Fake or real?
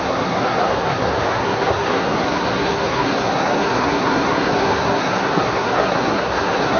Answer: fake